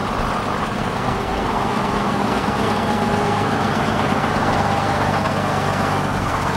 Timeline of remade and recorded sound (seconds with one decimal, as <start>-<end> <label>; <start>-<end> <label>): 0.0-0.6 recorded; 0.6-6.6 remade